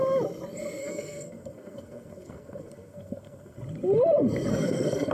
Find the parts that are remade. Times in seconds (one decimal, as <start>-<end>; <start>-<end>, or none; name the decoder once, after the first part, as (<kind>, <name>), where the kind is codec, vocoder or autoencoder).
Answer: 0.8-3.6 (codec, SNAC); 4.5-5.1